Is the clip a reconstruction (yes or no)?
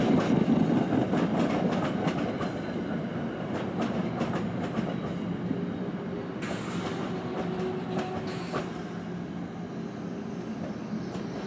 no